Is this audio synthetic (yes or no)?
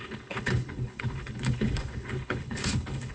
yes